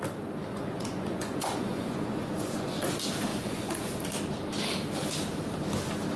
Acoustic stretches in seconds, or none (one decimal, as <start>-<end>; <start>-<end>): 0.0-0.5; 2.9-3.3; 4.0-6.2

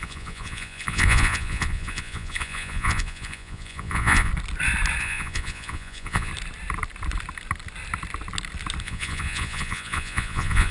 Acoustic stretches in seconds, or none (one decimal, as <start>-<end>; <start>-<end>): 4.3-5.0; 6.3-8.8

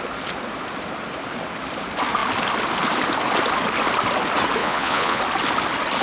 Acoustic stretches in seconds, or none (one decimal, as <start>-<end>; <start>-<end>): 0.0-4.6; 5.2-6.0

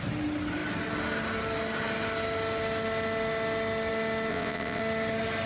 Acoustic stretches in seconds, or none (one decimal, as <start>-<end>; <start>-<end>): 0.0-4.3; 4.8-5.5

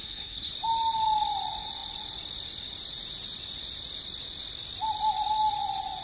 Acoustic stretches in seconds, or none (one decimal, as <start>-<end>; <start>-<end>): 0.5-6.0

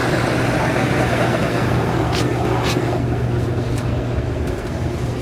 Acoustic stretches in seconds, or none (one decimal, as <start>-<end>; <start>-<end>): 0.0-0.6